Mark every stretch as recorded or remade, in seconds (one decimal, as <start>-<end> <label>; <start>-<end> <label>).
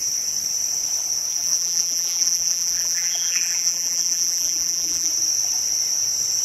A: 0.0-1.3 recorded; 1.3-5.1 remade; 5.1-6.4 recorded